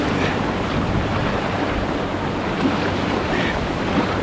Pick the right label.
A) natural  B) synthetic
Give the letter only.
B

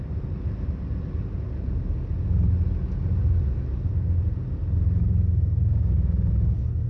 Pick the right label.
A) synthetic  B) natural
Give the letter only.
B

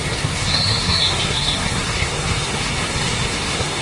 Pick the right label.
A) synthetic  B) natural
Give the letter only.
A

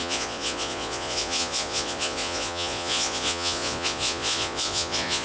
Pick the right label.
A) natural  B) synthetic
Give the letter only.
B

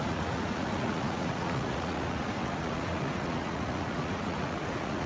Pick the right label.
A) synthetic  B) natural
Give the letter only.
A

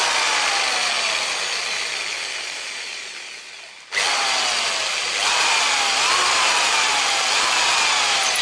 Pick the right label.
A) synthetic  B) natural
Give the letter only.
B